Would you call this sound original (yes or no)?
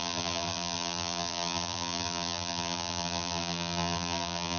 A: no